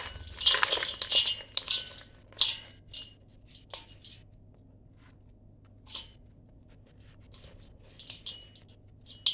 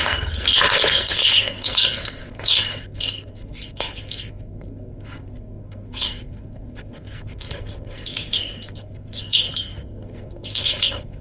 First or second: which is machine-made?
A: second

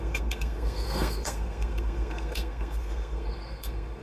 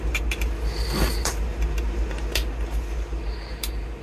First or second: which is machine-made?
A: first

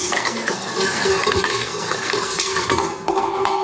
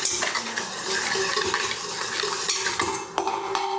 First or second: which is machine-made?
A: first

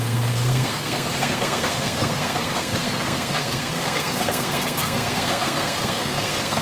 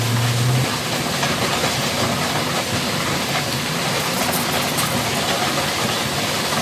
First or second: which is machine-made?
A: first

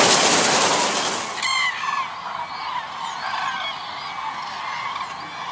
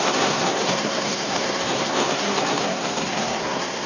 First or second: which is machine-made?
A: second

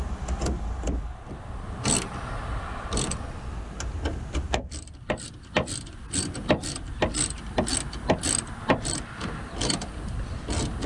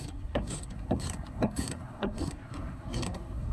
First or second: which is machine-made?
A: second